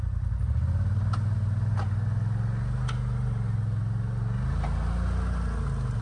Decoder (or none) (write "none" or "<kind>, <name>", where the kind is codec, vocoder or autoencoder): none